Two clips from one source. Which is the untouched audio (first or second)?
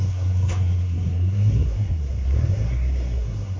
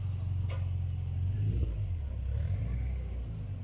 second